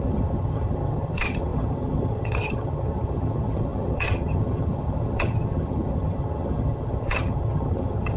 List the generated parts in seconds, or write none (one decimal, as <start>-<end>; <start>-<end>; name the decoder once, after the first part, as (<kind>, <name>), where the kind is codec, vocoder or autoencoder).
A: 0.0-8.2 (vocoder, HiFi-GAN)